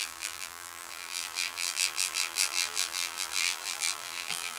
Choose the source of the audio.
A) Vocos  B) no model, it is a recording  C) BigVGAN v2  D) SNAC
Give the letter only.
C